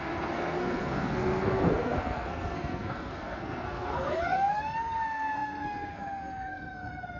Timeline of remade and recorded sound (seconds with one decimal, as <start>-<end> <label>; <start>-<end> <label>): 0.0-7.2 remade